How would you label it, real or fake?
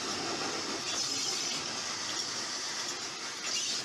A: real